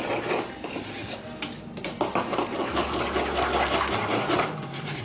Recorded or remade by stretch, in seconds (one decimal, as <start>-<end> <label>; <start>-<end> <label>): 0.0-5.0 recorded